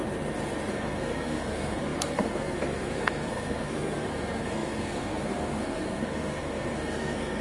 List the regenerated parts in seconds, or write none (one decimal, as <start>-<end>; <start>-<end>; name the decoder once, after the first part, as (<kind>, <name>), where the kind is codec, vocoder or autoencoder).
0.7-7.4 (codec, SNAC)